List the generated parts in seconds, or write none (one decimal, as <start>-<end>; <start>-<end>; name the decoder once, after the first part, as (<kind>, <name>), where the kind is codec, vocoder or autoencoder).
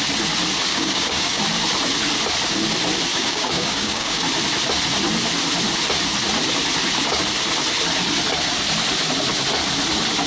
0.7-1.4 (codec, DAC); 3.1-4.2